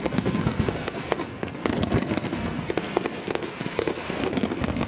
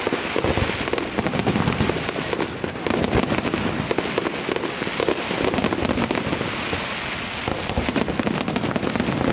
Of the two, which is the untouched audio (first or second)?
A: second